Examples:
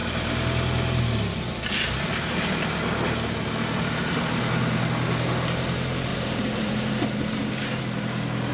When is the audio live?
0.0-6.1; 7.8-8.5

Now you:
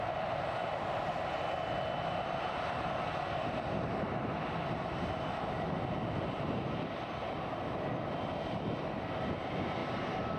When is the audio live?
0.0-10.4